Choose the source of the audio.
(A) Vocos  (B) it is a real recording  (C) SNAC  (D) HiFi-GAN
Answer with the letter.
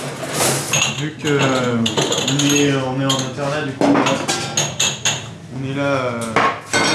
B